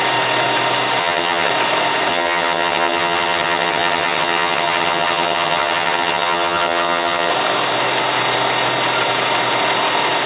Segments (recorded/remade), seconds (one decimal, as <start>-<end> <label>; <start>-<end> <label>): 0.0-1.0 recorded; 1.0-1.5 remade; 1.5-2.1 recorded; 2.1-7.3 remade; 7.3-10.3 recorded